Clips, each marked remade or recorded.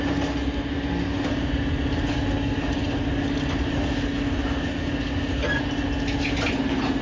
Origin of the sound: recorded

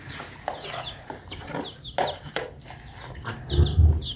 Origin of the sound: recorded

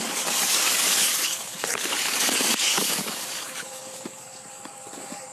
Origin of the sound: remade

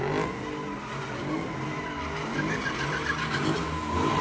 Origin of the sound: recorded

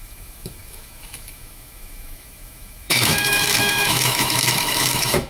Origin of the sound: remade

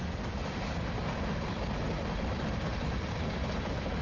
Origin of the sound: recorded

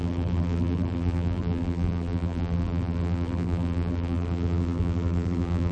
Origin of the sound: remade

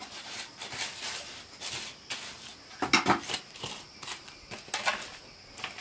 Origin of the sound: recorded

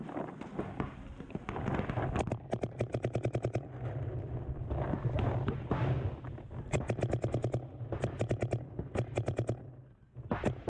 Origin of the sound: recorded